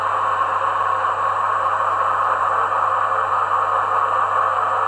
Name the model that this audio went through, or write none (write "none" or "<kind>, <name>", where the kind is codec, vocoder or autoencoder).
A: none